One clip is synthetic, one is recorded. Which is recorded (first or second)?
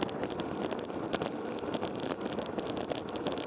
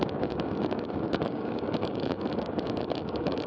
first